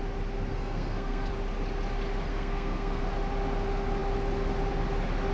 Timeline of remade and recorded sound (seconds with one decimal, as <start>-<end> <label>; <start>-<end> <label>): 0.0-0.5 recorded; 0.5-1.3 remade; 1.3-2.3 recorded; 2.3-3.0 remade; 3.0-5.3 recorded